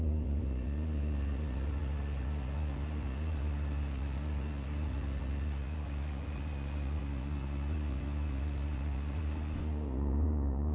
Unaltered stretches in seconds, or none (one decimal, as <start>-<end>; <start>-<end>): none